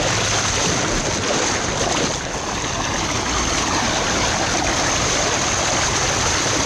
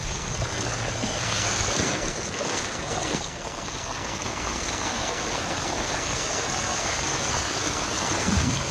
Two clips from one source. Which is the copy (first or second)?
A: second